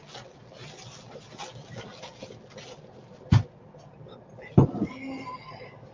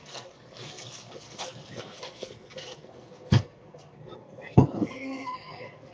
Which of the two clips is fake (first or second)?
second